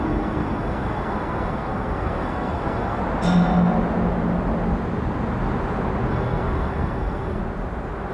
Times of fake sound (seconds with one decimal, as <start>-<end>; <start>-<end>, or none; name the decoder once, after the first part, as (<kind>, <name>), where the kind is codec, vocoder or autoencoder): 0.0-3.0 (codec, SNAC); 6.1-7.4